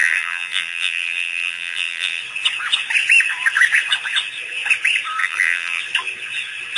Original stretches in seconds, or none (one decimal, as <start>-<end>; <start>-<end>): 2.2-5.2; 5.8-6.8